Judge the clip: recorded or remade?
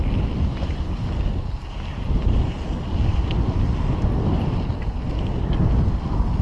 recorded